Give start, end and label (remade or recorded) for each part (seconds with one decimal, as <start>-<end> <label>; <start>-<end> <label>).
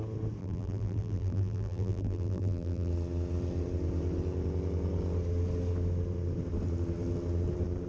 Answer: 0.0-0.4 recorded; 0.4-2.9 remade; 2.9-7.9 recorded